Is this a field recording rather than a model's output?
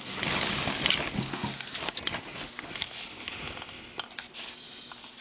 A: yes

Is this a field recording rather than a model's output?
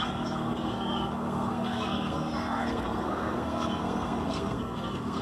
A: no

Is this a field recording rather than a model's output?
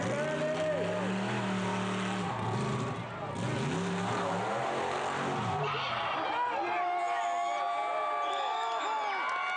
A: yes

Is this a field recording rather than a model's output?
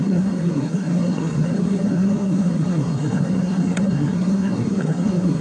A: no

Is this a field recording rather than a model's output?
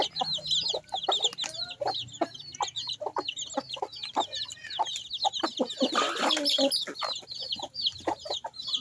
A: yes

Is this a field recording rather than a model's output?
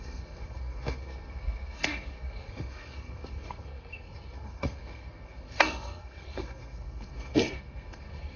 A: no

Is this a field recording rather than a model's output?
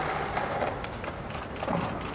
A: yes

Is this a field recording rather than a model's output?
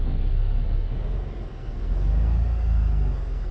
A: no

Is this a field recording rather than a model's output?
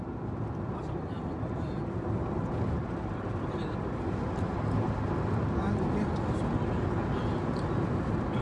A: yes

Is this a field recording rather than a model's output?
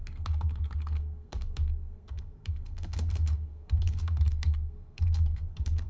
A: no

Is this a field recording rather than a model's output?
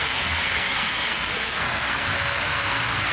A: no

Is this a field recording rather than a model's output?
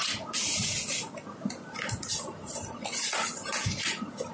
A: yes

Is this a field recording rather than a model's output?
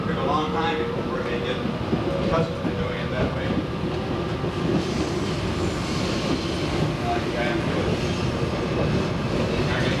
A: yes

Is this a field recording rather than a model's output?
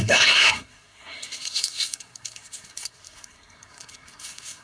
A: no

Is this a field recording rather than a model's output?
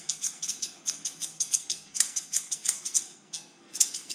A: no